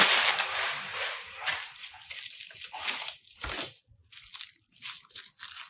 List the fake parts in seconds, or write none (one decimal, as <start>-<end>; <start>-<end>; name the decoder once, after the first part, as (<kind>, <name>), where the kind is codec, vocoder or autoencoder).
none